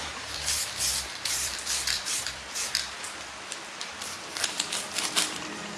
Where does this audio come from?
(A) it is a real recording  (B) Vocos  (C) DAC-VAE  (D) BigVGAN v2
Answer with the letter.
D